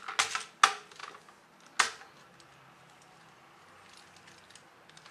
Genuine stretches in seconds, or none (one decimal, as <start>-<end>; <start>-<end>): 0.0-5.1